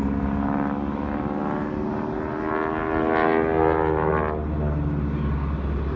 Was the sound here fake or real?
real